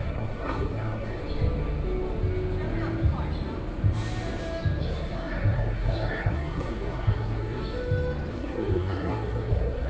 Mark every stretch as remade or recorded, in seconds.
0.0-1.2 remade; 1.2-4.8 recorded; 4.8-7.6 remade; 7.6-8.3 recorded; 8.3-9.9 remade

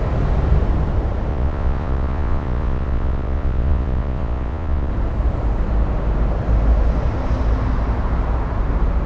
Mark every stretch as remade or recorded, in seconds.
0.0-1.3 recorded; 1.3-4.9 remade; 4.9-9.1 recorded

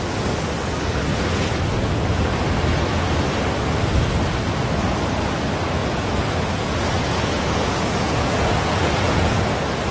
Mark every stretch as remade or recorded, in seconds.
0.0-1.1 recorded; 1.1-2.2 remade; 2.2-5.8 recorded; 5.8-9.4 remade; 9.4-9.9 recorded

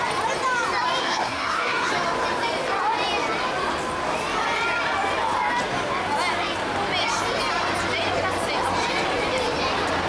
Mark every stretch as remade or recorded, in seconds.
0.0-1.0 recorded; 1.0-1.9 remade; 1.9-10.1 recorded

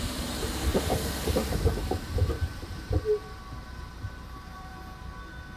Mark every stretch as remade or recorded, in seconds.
0.0-4.8 remade; 4.8-5.6 recorded

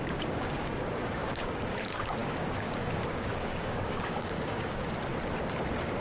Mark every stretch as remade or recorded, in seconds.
0.0-5.1 remade; 5.1-6.0 recorded

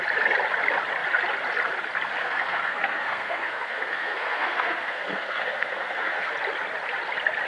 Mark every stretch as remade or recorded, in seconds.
0.0-2.2 recorded; 2.2-6.3 remade; 6.3-7.5 recorded